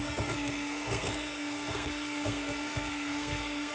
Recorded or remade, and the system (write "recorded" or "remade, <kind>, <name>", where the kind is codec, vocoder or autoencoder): remade, codec, SNAC